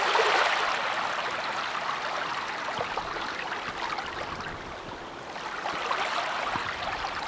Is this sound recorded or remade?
recorded